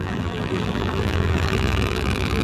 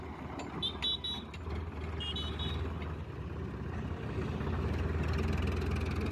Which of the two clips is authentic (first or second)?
second